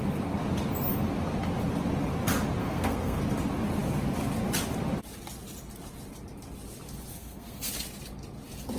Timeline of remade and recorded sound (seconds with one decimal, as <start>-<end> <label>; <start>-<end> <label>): 0.0-2.6 recorded; 2.6-3.2 remade; 3.2-7.1 recorded; 7.1-7.7 remade; 7.7-8.8 recorded